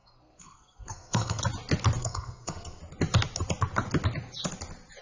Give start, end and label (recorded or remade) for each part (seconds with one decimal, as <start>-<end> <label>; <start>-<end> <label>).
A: 0.0-1.4 remade; 1.4-2.0 recorded; 2.0-2.8 remade; 2.8-5.0 recorded